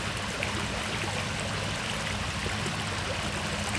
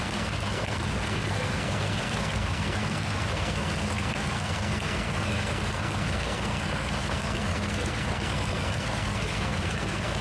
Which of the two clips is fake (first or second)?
second